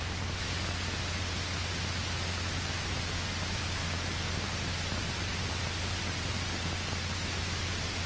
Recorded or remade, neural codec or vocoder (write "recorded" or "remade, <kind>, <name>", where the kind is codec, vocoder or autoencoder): recorded